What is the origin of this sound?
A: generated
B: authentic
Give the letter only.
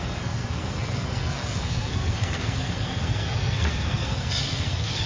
A